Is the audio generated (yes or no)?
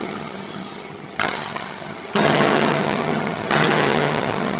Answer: yes